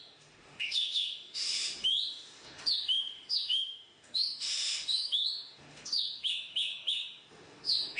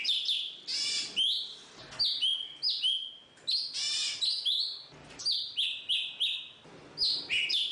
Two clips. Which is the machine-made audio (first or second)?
first